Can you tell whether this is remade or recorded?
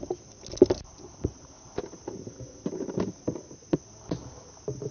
recorded